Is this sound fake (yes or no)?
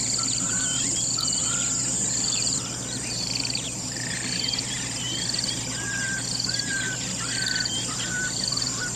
yes